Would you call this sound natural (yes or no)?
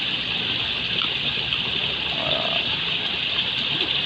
no